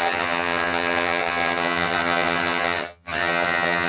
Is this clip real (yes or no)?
no